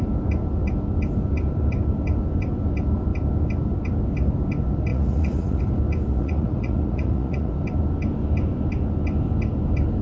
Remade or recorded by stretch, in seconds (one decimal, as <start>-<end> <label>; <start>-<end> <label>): 0.0-4.9 recorded; 4.9-5.6 remade; 5.6-6.1 recorded; 6.1-7.5 remade; 7.5-10.0 recorded